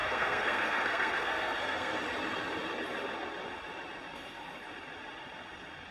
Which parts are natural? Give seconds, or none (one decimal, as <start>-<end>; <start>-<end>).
2.0-5.9